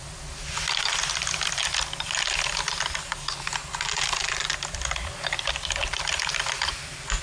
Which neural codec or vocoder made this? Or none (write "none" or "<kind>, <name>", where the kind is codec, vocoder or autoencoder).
none